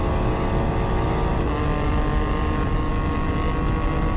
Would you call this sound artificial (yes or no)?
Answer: no